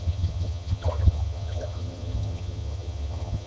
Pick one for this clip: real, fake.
fake